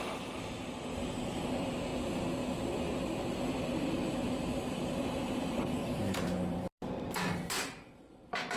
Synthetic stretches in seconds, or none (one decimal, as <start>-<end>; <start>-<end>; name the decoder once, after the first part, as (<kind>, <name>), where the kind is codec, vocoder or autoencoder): 0.0-1.9 (vocoder, BigVGAN v2); 3.3-8.6